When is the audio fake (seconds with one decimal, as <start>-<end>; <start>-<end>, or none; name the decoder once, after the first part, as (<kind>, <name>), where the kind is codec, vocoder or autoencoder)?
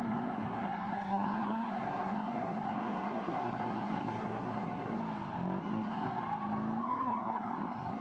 0.0-5.0 (codec, SNAC); 5.6-6.2; 6.8-8.0